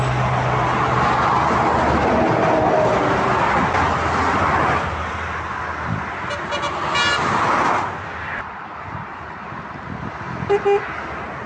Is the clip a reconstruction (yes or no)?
no